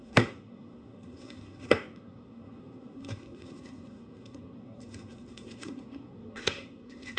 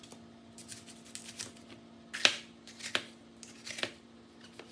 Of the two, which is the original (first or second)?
second